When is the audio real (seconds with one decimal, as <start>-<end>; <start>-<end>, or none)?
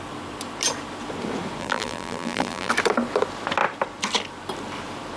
0.0-1.6; 2.7-5.2